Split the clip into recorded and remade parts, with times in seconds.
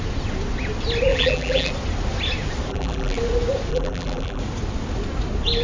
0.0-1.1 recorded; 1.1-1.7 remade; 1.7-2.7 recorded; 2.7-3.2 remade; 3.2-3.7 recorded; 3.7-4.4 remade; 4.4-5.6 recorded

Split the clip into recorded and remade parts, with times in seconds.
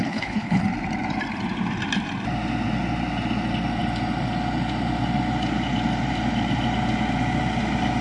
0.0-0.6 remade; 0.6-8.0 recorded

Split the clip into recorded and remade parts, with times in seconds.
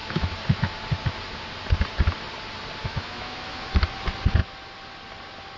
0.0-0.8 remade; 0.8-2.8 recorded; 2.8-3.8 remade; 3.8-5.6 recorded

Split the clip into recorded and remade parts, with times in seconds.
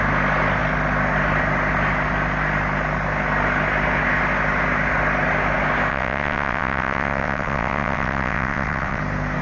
0.0-5.9 recorded; 5.9-9.0 remade; 9.0-9.4 recorded